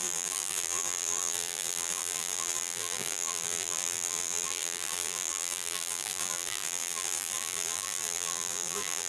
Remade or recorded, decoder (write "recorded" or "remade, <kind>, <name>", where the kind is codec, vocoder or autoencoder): remade, vocoder, BigVGAN v2